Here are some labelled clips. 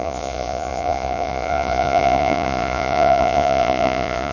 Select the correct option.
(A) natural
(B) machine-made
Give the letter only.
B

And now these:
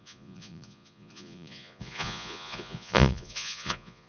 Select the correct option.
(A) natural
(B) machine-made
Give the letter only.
B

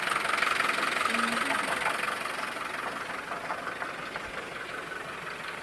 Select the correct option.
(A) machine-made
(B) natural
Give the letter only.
B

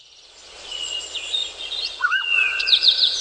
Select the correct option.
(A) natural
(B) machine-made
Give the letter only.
B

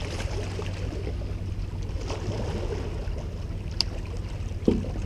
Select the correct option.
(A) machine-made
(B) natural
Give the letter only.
B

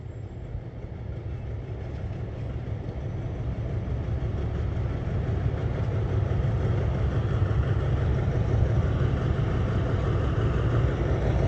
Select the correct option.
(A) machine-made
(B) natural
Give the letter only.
B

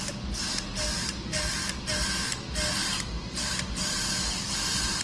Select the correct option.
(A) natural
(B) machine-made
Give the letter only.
A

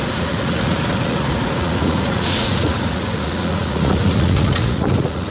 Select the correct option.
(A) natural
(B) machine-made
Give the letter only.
B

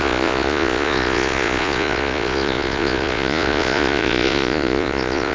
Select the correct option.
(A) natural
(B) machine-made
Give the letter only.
B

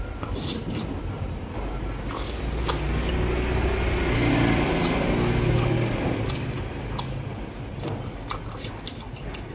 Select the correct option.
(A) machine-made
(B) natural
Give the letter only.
B